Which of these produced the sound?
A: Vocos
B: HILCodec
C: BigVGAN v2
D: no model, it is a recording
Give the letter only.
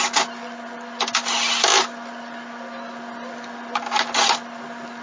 D